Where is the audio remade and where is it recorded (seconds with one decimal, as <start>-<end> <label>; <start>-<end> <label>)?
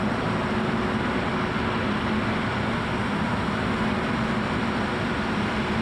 0.0-5.8 recorded